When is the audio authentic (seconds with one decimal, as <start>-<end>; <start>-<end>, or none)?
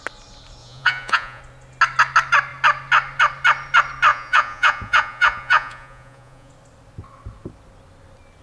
0.0-0.6; 1.4-4.1; 6.5-8.4